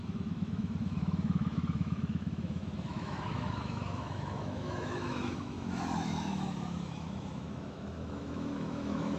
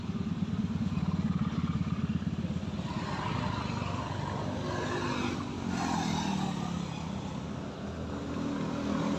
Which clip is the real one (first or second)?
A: second